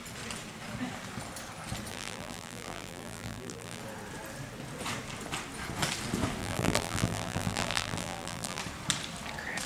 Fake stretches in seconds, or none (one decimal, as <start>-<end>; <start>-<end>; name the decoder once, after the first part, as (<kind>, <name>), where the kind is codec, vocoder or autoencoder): 1.9-3.8 (vocoder, BigVGAN v2); 6.4-8.6